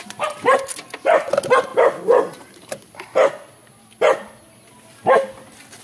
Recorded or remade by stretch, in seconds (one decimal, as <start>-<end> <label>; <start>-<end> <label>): 0.0-1.7 recorded; 1.7-2.9 remade; 2.9-5.8 recorded